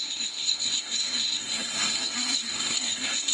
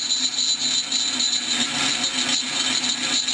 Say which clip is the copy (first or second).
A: first